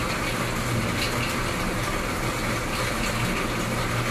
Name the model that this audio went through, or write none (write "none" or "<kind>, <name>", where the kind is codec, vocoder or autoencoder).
none